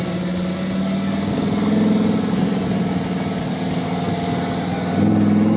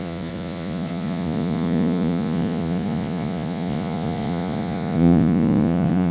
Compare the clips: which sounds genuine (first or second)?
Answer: first